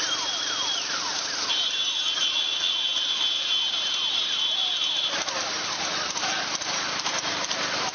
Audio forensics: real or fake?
real